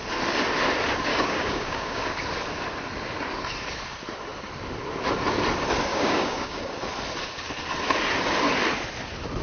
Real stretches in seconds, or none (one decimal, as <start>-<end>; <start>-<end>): 0.0-1.1; 2.0-5.9; 6.6-9.4